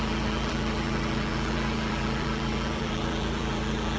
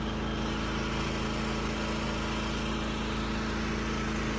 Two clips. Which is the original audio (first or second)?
second